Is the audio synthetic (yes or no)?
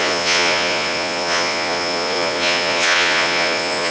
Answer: yes